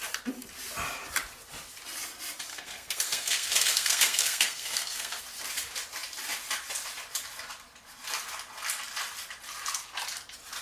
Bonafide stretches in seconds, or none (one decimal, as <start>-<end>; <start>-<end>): 0.0-2.5; 5.2-10.6